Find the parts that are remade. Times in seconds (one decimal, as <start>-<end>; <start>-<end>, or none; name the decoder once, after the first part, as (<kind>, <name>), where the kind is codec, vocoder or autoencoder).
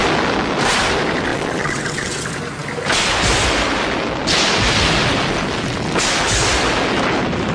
1.3-2.2 (vocoder, WaveNeXt)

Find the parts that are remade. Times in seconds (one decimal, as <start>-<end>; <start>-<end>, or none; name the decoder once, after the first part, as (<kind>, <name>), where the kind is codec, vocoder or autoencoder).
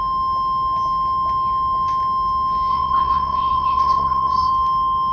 2.7-4.5 (vocoder, WaveNeXt)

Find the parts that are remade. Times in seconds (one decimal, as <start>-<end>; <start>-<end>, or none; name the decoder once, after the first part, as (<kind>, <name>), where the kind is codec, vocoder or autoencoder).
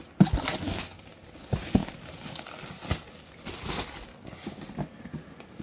none